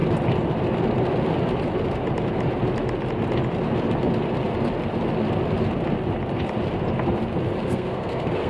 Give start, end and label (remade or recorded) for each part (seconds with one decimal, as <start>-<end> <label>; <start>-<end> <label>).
0.0-7.6 recorded; 7.6-8.5 remade